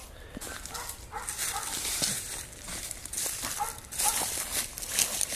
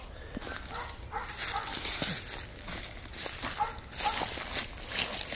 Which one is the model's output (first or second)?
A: first